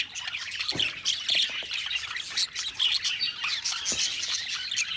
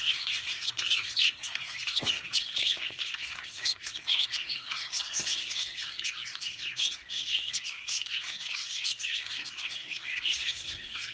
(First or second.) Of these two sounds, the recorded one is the first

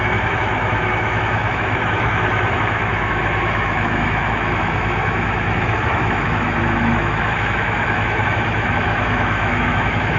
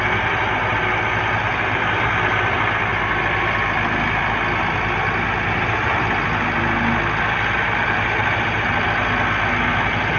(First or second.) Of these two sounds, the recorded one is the second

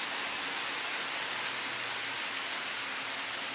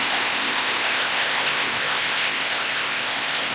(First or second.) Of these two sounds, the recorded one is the first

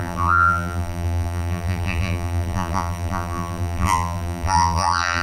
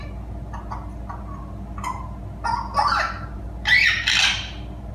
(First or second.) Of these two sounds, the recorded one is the second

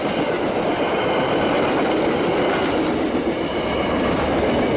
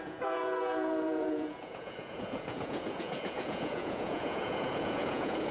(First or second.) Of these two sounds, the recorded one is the first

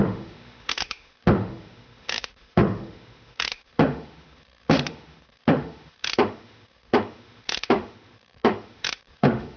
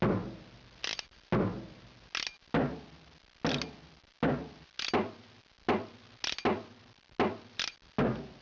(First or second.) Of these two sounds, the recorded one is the second